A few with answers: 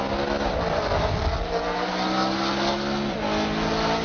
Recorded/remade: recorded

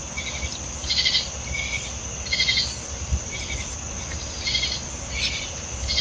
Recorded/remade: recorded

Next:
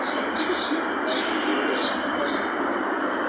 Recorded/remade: recorded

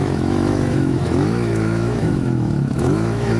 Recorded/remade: remade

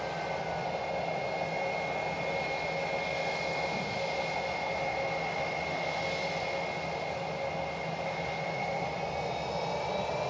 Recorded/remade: recorded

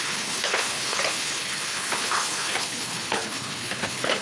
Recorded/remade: remade